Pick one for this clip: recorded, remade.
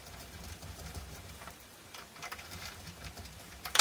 remade